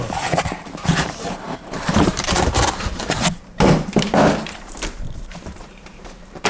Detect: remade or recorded remade